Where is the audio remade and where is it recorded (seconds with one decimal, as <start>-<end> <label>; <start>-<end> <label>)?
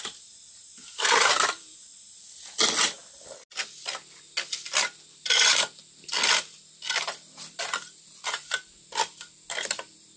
0.0-10.2 recorded